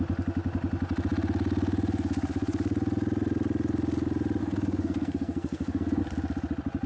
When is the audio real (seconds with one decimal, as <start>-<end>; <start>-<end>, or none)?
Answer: 0.0-4.4; 6.0-6.9